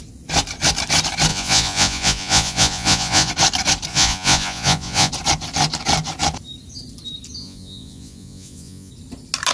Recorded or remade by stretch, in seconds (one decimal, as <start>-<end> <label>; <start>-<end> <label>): 0.0-1.3 recorded; 1.3-3.3 remade; 3.3-3.9 recorded; 3.9-5.1 remade; 5.1-7.4 recorded; 7.4-8.9 remade; 8.9-9.5 recorded